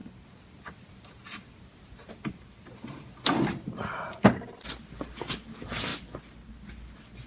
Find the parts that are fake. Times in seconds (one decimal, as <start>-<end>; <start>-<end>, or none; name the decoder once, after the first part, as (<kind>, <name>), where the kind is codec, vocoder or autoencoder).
none